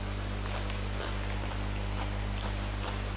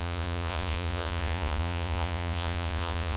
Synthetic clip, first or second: second